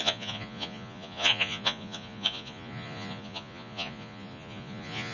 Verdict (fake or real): fake